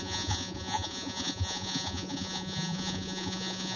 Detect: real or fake fake